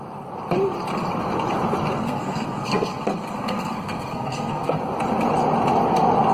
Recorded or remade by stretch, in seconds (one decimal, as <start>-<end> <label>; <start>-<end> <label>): 0.0-2.0 recorded; 2.0-4.8 remade; 4.8-6.3 recorded